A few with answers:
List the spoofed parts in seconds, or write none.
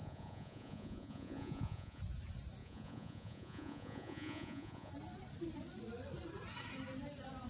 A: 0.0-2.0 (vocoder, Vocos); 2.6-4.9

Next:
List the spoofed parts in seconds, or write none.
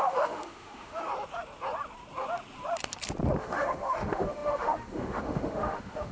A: 0.0-1.1 (autoencoder, DAC-VAE); 3.4-6.1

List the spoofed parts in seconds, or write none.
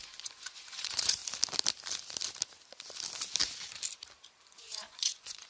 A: 0.0-1.2 (vocoder, Vocos); 4.5-5.5